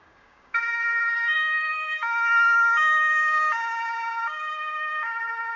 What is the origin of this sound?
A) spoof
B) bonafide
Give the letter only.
A